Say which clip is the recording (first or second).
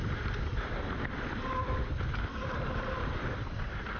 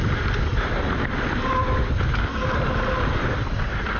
second